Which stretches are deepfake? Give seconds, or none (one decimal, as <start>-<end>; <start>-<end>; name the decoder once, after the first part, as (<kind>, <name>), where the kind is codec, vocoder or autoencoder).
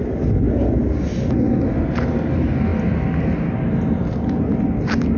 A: none